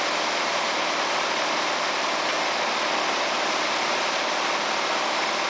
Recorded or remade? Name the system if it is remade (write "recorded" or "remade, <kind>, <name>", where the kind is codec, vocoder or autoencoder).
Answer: recorded